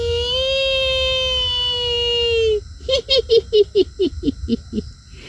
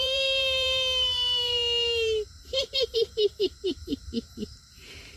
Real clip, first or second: first